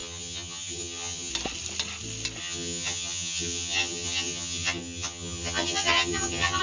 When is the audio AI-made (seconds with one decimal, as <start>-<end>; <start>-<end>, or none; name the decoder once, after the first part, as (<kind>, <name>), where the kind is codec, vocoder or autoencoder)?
0.0-1.3 (vocoder, HiFi-GAN); 2.4-6.6